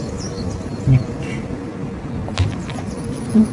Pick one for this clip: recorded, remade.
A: recorded